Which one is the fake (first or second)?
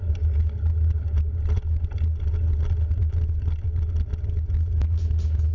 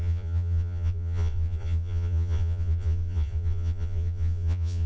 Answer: second